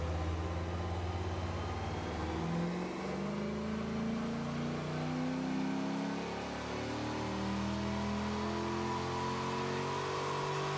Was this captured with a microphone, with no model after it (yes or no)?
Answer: yes